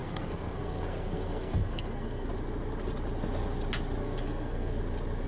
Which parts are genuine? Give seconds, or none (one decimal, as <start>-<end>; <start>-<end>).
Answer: 2.3-4.0; 4.8-5.3